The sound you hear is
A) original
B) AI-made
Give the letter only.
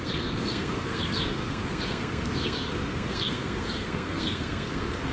B